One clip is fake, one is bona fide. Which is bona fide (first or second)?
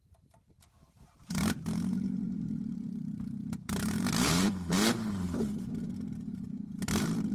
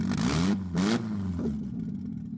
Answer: second